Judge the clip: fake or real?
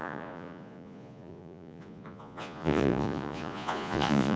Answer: fake